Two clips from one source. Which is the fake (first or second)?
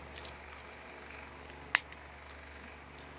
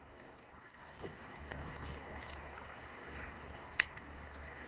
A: second